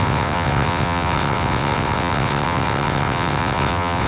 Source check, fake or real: fake